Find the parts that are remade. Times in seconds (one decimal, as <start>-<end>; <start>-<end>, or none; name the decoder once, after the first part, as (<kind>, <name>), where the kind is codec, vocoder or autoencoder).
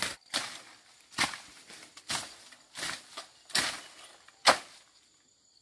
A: none